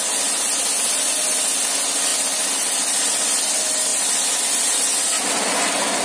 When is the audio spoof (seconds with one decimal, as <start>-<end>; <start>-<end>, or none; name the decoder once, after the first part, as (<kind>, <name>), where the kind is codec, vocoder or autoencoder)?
none